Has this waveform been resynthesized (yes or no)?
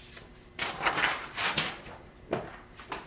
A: yes